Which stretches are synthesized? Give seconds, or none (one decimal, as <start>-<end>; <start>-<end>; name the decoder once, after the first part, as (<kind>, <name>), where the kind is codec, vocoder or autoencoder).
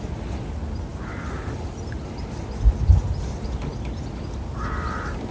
none